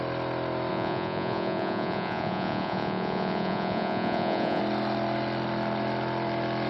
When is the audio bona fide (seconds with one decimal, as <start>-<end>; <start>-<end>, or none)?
0.0-0.7; 4.6-6.7